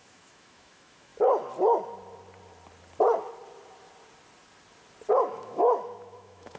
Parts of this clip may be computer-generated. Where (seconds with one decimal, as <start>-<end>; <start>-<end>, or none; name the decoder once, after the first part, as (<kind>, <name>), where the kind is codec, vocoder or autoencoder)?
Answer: 0.0-1.1 (autoencoder, DAC-VAE); 5.1-6.6